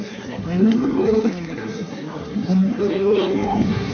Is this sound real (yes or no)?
no